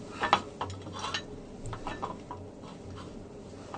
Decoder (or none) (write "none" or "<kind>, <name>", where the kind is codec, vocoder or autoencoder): none